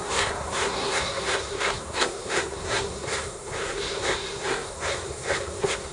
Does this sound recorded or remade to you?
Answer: remade